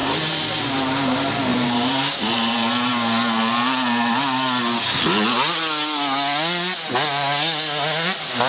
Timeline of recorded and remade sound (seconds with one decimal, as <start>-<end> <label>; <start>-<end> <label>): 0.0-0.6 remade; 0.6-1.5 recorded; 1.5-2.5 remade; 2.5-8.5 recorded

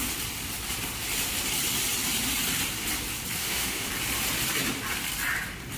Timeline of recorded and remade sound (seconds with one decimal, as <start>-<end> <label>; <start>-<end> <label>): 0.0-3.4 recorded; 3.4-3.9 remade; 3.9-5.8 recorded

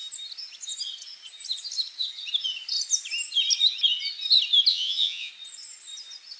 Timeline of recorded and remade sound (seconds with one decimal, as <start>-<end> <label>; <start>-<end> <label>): 0.0-4.7 recorded; 4.7-5.3 remade; 5.3-6.4 recorded

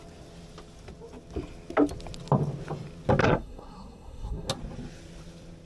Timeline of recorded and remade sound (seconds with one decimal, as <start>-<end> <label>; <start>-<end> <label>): 0.0-3.2 recorded; 3.2-4.5 remade; 4.5-5.7 recorded

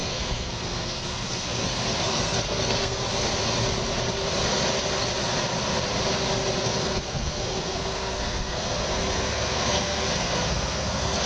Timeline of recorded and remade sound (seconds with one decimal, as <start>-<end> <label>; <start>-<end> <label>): 0.0-3.0 remade; 3.0-6.6 recorded; 6.6-11.3 remade